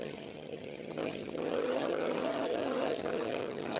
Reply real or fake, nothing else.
fake